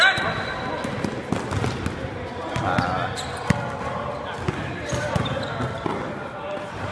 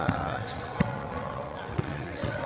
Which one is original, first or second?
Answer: first